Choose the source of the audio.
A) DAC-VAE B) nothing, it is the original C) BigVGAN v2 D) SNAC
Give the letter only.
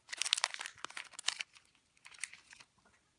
B